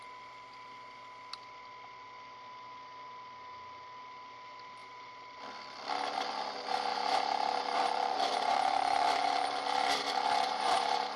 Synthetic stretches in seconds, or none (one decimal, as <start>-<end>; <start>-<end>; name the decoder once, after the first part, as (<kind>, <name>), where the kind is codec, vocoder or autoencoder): 4.8-5.4 (vocoder, BigVGAN v2); 6.9-11.2